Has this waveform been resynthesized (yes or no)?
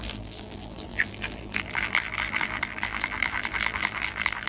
yes